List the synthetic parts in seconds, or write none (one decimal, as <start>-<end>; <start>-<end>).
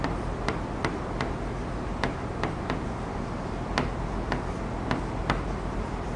1.9-2.6